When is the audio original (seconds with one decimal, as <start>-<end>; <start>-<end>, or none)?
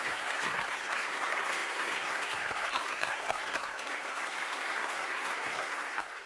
none